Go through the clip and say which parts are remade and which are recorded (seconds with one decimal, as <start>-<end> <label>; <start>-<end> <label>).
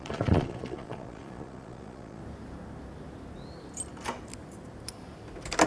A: 0.0-2.2 remade; 2.2-5.7 recorded